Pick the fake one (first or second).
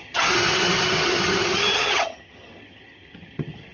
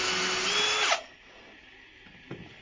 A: first